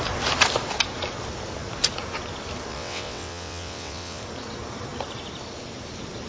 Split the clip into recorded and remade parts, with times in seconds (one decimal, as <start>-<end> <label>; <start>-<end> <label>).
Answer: 0.0-2.7 recorded; 2.7-4.2 remade; 4.2-6.3 recorded